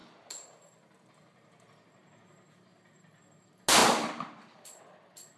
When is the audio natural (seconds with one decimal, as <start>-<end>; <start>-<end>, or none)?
0.9-3.8; 4.8-5.4

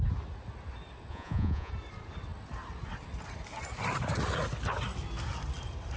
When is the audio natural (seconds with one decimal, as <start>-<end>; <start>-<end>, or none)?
0.0-1.1; 1.7-6.0

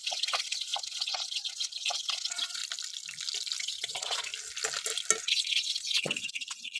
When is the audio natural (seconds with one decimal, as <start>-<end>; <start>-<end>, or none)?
2.6-3.6; 4.3-5.2